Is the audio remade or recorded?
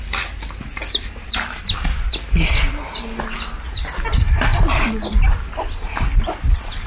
recorded